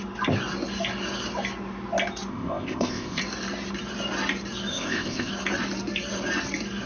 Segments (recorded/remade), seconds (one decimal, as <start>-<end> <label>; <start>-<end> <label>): 0.0-2.3 recorded; 2.3-3.2 remade; 3.2-4.7 recorded; 4.7-5.3 remade; 5.3-6.9 recorded